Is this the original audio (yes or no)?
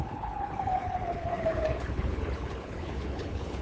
no